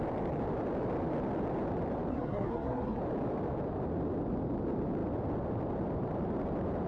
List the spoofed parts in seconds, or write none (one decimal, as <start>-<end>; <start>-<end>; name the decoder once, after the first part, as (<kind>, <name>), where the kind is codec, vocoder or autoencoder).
2.1-3.0 (codec, SNAC)